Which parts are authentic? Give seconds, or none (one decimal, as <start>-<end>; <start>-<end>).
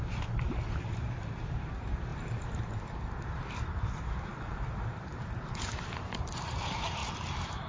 none